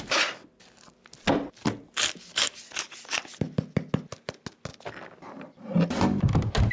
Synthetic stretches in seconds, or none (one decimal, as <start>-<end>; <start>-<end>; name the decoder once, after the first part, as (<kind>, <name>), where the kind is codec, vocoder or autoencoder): none